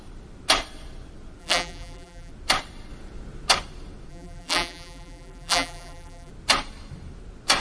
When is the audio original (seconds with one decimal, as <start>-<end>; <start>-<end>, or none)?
0.0-1.4; 2.3-4.1; 6.3-7.6